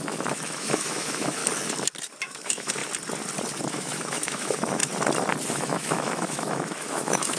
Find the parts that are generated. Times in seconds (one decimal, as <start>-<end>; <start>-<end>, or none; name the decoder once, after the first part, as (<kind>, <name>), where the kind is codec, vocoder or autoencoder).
0.0-1.4 (autoencoder, DAC-VAE); 2.2-2.8; 3.7-4.8; 5.5-7.4